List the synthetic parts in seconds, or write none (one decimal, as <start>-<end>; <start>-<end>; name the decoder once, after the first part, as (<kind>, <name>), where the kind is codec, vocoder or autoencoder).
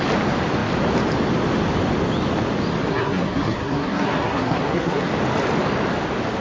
2.9-5.1 (codec, SNAC)